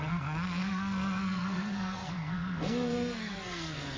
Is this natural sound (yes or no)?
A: no